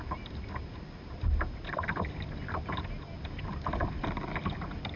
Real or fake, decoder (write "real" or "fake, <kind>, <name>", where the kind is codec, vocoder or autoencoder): real